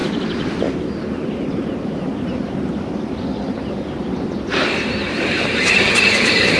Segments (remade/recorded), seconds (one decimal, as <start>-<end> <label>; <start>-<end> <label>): 0.0-5.5 remade; 5.5-6.6 recorded